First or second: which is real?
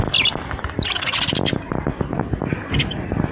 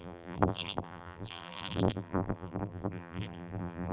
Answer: first